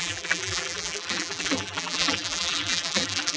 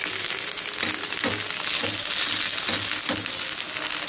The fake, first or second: first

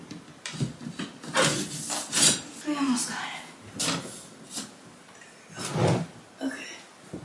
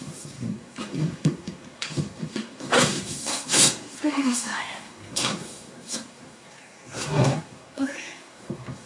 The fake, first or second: second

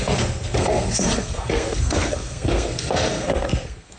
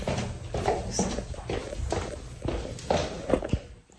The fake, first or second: first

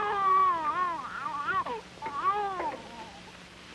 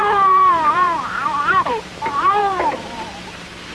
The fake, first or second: second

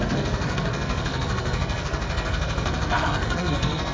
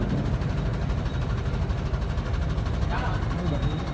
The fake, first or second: first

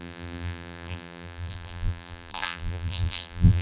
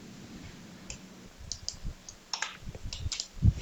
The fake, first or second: first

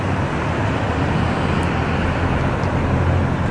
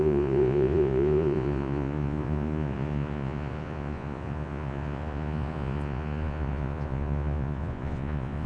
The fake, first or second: second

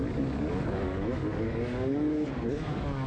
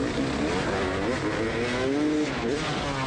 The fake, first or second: first